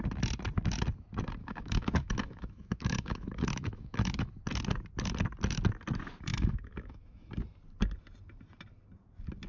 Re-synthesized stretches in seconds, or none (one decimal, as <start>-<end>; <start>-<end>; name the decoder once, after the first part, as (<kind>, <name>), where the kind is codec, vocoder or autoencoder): 1.4-4.3 (autoencoder, DAC-VAE); 6.3-7.3